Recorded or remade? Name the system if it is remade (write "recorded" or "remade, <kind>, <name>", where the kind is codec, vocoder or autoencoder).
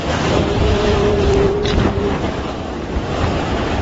remade, vocoder, BigVGAN v2